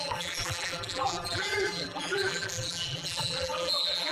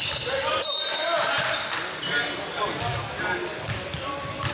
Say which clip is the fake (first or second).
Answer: first